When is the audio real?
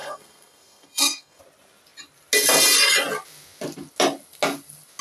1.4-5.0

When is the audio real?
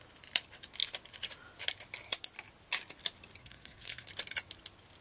0.0-3.4; 4.1-5.0